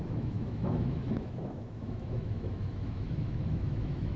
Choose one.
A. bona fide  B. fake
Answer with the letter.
B